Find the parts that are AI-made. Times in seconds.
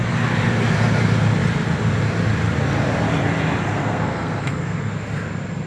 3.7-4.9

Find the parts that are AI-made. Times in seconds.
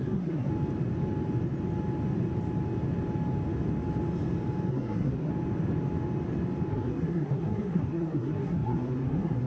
0.0-0.5; 4.7-5.3; 6.7-9.5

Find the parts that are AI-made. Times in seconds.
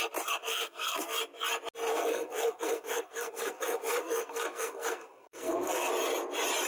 0.4-1.2; 1.9-5.9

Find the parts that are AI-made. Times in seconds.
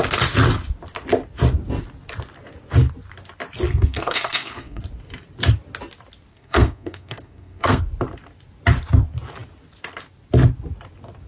3.7-4.8; 6.3-7.8